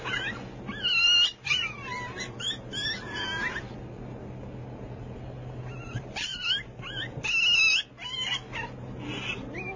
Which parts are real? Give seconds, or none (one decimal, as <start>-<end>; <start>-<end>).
0.0-9.8